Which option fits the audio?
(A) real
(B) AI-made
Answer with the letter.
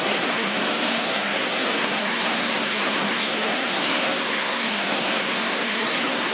B